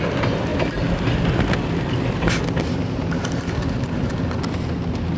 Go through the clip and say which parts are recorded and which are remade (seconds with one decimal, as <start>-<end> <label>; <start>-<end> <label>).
0.0-5.2 recorded